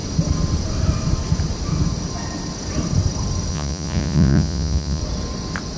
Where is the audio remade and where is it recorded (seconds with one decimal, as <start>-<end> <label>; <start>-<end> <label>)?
0.0-3.5 recorded; 3.5-5.0 remade; 5.0-5.8 recorded